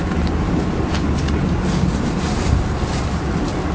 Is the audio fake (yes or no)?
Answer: no